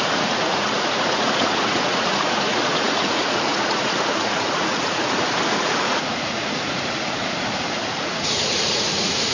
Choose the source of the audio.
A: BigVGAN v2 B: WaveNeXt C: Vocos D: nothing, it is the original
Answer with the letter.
C